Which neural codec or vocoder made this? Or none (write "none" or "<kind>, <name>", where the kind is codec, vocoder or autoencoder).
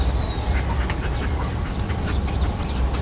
none